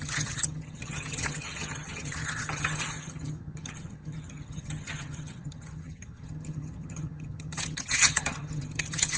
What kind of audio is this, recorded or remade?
remade